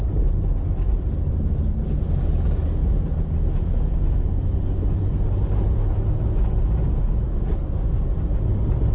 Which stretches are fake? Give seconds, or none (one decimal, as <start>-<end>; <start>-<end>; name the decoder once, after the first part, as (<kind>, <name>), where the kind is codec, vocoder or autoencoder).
none